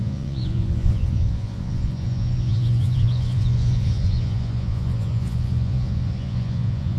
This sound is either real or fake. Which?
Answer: fake